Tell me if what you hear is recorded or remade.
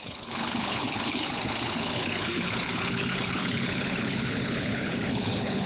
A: remade